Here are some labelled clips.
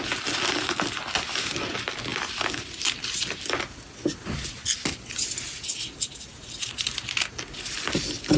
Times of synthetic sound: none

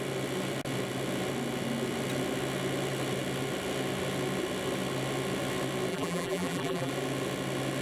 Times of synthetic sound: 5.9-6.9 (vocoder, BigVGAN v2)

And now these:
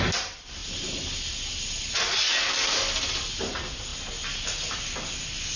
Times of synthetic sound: none